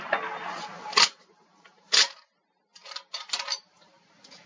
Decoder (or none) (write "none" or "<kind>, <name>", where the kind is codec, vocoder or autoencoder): none